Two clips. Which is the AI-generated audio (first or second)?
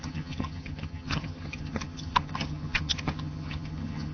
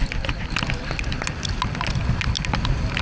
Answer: first